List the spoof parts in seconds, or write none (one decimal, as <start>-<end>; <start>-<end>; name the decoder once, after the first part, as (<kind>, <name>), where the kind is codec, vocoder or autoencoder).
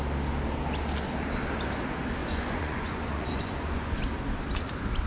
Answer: 2.2-4.0 (vocoder, Vocos)